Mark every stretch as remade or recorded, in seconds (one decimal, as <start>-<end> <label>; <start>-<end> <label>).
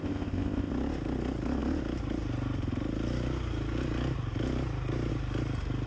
0.0-0.7 remade; 0.7-5.9 recorded